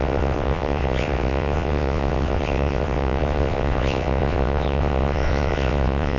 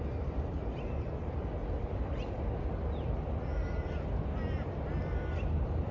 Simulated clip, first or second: first